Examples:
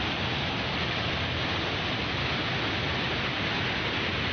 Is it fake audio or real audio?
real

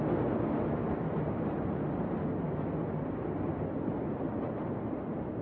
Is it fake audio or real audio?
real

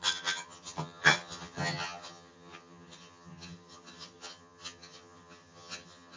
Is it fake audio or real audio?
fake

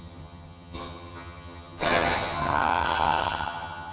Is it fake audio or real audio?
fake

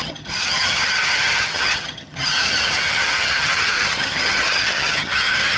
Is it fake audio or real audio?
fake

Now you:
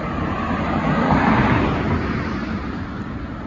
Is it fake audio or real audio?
real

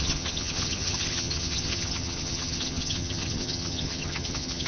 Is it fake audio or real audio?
fake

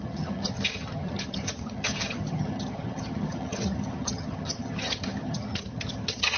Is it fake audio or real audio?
fake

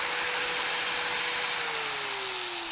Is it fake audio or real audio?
real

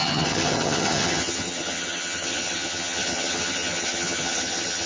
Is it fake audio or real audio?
fake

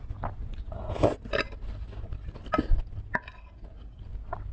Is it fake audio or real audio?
real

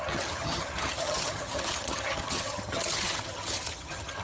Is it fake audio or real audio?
fake